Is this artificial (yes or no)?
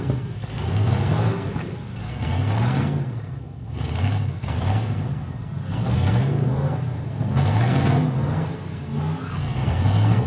yes